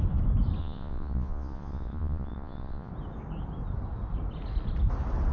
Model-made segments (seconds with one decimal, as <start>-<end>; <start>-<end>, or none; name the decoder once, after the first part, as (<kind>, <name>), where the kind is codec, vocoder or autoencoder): 0.6-2.9 (vocoder, Vocos)